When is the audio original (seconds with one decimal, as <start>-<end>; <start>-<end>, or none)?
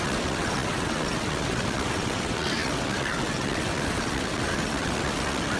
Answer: none